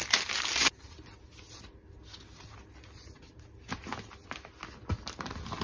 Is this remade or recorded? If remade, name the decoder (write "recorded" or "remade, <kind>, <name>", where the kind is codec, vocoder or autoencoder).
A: recorded